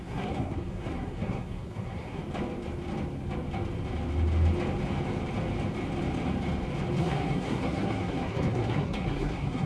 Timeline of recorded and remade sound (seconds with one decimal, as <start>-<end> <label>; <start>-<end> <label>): 0.0-2.2 remade; 2.2-7.0 recorded; 7.0-9.7 remade